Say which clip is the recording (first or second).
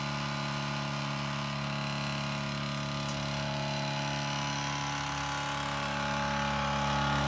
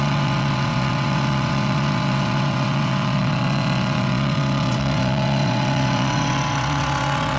first